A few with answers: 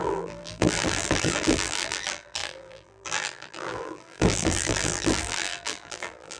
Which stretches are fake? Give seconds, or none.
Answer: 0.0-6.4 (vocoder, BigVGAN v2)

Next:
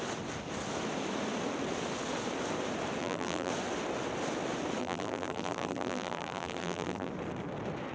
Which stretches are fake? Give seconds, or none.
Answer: 3.0-3.5 (vocoder, BigVGAN v2); 4.8-7.1

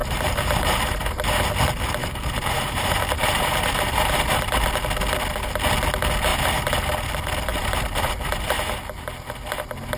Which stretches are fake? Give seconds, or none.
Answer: 0.0-1.2 (vocoder, BigVGAN v2); 2.0-4.7; 6.3-6.9; 7.5-8.8

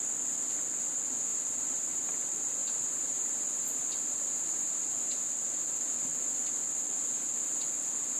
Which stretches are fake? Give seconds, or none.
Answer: 1.3-1.9 (vocoder, BigVGAN v2); 2.6-5.2